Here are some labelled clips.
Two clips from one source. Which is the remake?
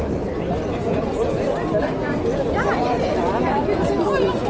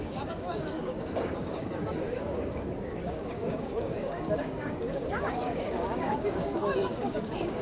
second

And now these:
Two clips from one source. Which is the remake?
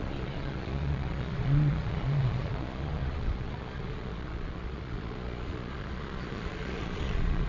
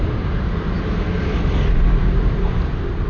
first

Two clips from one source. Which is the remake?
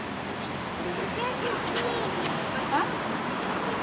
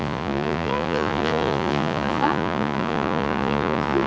second